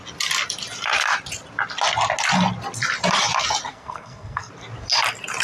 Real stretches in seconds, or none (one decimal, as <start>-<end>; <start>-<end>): 0.0-3.7; 4.5-5.4